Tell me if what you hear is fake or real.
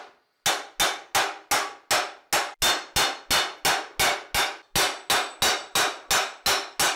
real